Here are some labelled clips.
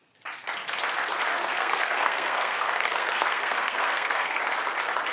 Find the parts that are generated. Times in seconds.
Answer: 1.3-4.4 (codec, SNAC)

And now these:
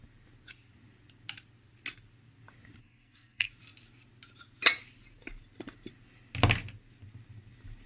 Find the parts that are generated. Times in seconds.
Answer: 2.8-3.5 (codec, SNAC)